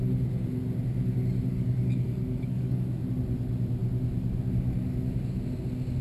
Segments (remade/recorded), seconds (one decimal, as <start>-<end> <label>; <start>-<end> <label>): 0.0-1.5 recorded; 1.5-3.1 remade; 3.1-6.0 recorded